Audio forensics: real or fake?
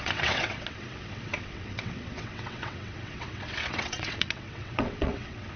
fake